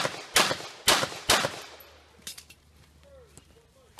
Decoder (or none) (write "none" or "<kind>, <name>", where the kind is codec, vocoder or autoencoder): none